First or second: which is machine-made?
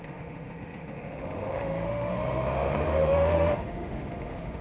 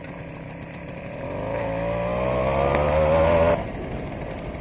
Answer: first